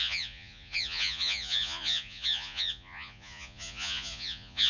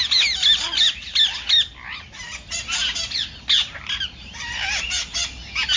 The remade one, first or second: first